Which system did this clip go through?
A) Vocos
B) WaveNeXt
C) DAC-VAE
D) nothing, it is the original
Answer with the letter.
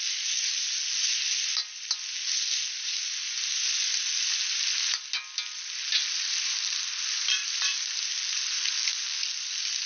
D